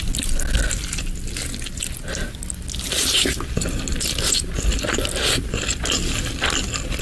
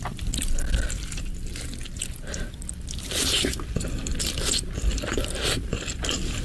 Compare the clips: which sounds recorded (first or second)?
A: first